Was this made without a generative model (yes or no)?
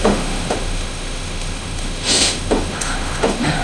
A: no